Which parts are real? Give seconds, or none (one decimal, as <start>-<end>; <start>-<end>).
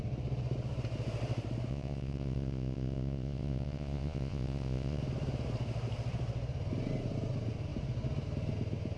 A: 0.0-1.7; 5.0-9.0